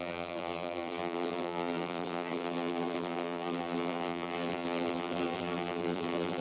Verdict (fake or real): fake